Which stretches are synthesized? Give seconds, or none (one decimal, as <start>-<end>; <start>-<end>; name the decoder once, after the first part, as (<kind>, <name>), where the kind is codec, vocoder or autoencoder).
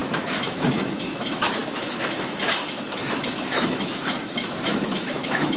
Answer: 0.0-5.6 (autoencoder, DAC-VAE)